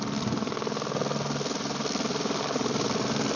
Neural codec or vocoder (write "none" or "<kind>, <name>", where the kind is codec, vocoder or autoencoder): none